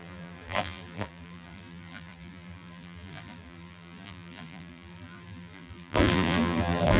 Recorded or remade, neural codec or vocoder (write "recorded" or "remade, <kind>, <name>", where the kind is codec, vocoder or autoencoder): remade, vocoder, BigVGAN v2